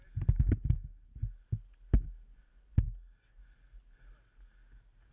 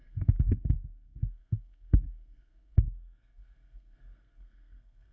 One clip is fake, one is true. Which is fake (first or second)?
second